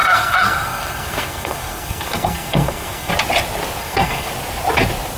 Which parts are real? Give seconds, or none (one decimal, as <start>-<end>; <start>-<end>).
3.1-3.8; 4.3-5.2